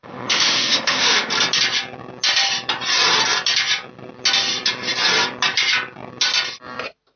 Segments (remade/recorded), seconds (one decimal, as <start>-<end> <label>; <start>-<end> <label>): 0.0-1.3 remade; 1.3-7.2 recorded